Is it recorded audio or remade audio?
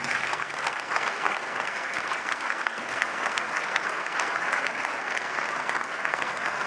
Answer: remade